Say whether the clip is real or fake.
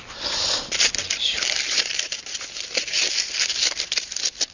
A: real